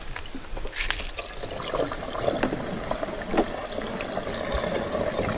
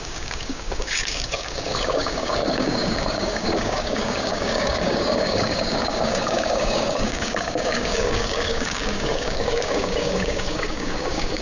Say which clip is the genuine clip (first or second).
first